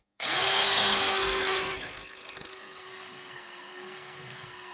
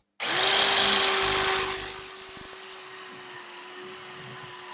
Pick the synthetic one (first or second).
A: first